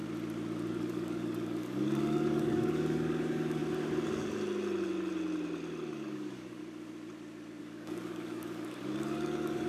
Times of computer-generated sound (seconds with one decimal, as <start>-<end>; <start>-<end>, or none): 0.7-3.6; 5.9-6.6; 7.6-9.7